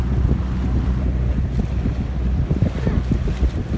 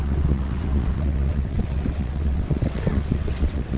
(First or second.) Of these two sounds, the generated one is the second